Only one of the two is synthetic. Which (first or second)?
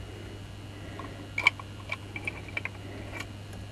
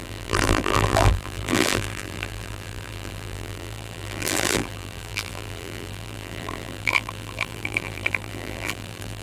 second